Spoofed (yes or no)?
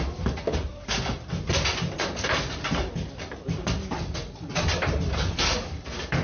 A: no